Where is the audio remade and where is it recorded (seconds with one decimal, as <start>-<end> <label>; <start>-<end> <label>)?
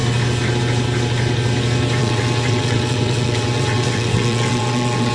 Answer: 0.0-2.0 recorded; 2.0-5.1 remade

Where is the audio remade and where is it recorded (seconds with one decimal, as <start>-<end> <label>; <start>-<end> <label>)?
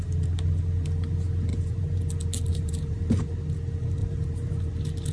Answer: 0.0-1.5 recorded; 1.5-2.0 remade; 2.0-2.5 recorded; 2.5-3.3 remade; 3.3-4.0 recorded; 4.0-4.5 remade; 4.5-5.1 recorded